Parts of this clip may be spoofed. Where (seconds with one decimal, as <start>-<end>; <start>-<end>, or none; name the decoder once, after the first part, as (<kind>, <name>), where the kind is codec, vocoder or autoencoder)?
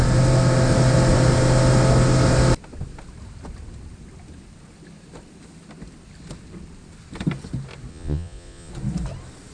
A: 7.9-8.7 (vocoder, Vocos)